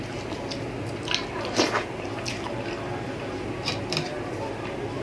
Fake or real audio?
real